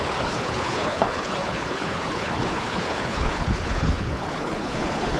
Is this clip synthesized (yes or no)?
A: yes